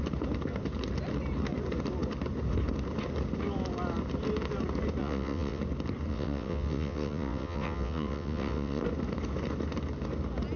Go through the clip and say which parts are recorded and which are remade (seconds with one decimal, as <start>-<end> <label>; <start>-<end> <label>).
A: 0.0-5.0 recorded; 5.0-5.6 remade; 5.6-6.1 recorded; 6.1-8.8 remade; 8.8-10.6 recorded